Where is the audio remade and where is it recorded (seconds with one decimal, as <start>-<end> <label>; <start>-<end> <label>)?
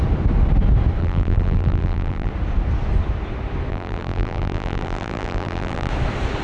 0.0-1.0 recorded; 1.0-2.3 remade; 2.3-3.7 recorded; 3.7-5.9 remade; 5.9-6.4 recorded